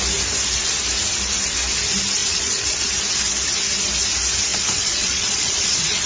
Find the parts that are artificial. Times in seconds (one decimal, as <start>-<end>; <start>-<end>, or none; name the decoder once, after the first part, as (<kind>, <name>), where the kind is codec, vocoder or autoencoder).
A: 2.2-2.9 (vocoder, Vocos); 4.5-6.1